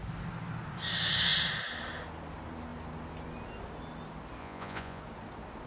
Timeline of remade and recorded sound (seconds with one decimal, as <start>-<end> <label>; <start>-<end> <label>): 0.0-4.4 recorded; 4.4-5.0 remade; 5.0-5.7 recorded